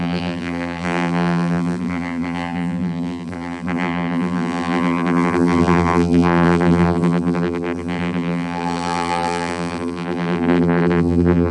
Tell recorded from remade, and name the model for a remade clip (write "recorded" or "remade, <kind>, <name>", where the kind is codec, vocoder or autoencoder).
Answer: remade, vocoder, BigVGAN v2